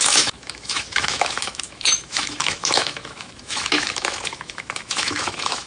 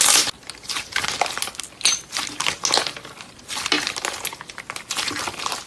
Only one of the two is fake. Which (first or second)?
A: first